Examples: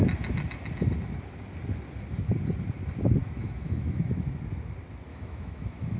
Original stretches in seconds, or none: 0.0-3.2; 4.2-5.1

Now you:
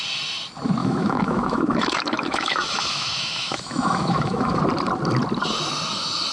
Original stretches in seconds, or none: 0.0-0.8; 4.6-6.3

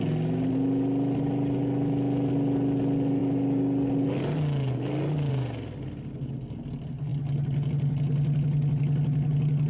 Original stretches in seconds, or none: 0.0-9.7

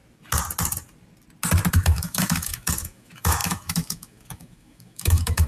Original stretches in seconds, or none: 0.0-1.7